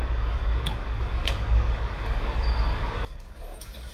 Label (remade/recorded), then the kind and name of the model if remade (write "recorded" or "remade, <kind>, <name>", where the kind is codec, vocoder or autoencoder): remade, codec, DAC